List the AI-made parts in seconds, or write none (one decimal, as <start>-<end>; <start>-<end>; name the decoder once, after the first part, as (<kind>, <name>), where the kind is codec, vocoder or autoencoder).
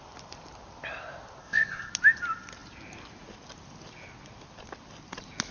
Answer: 1.4-1.9 (codec, ZipCodec)